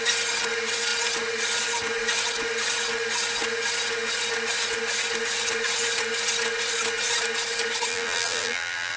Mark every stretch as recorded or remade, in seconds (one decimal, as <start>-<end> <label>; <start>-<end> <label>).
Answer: 0.0-7.9 recorded; 7.9-9.0 remade